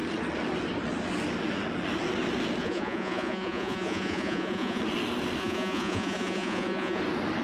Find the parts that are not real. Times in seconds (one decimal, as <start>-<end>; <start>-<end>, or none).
2.6-4.8; 5.4-7.0